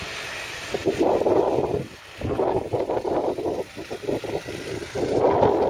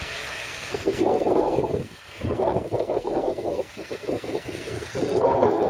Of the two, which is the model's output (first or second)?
second